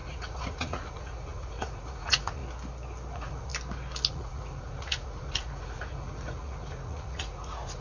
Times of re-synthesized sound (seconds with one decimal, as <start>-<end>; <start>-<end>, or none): 0.0-2.4; 3.1-3.5; 4.1-7.8